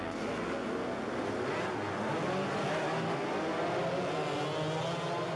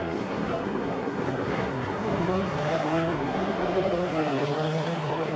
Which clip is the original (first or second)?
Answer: first